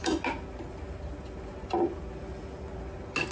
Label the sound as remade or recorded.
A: recorded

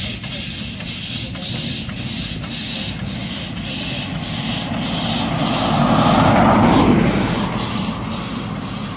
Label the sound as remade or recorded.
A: recorded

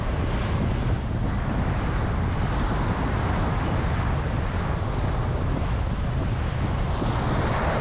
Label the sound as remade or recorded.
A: recorded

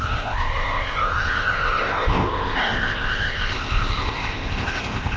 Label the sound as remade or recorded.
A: remade